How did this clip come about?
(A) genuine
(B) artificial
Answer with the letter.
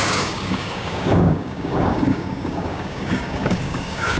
B